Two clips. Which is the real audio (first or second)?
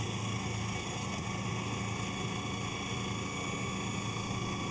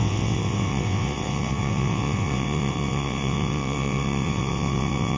first